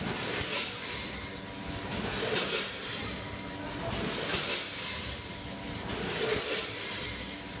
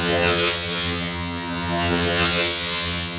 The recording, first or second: first